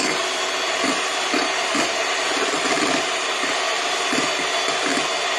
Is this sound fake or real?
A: real